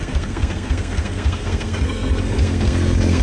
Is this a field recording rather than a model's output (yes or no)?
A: no